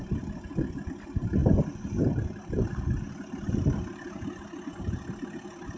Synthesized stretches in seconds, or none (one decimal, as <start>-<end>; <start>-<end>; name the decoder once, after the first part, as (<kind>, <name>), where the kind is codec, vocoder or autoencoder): none